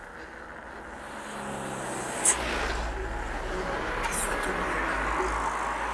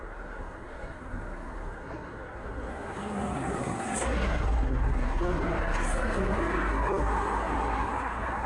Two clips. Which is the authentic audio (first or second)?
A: first